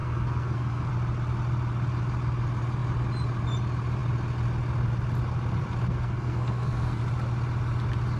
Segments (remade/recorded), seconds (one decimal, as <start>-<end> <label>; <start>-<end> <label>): 0.0-0.9 remade; 0.9-5.9 recorded; 5.9-7.0 remade; 7.0-8.2 recorded